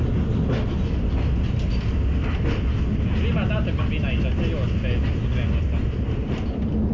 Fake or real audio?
real